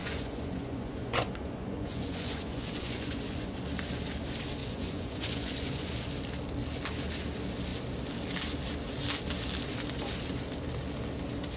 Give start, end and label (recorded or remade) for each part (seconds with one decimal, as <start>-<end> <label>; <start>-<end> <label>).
0.0-3.6 remade; 3.6-4.6 recorded; 4.6-6.0 remade; 6.0-11.6 recorded